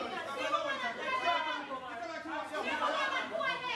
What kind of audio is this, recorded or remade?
recorded